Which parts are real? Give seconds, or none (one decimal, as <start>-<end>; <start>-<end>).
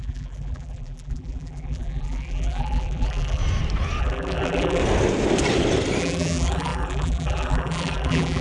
3.4-4.0; 4.8-6.0